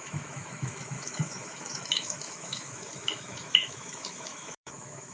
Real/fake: fake